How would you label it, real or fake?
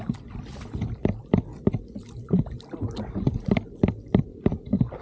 real